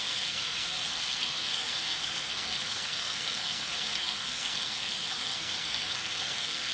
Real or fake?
fake